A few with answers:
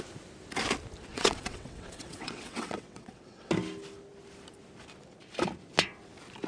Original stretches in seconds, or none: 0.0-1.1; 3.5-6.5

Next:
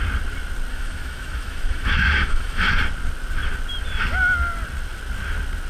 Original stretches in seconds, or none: 0.0-0.7; 2.7-5.7

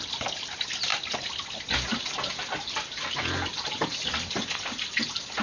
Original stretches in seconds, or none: 0.0-5.4

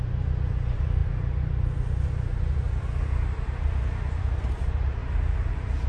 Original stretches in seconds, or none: 0.0-5.9

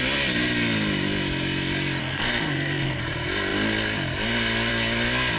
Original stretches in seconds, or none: 0.0-2.0; 3.0-5.4